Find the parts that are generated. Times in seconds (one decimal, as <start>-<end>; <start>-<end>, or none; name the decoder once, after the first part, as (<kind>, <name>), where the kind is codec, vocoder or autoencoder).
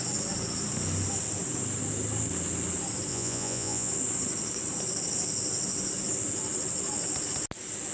3.1-3.9 (vocoder, Vocos)